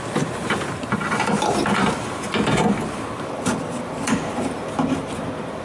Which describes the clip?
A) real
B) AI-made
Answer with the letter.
A